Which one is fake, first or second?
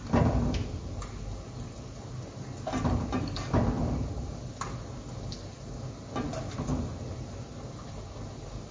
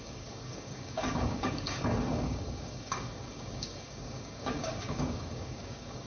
second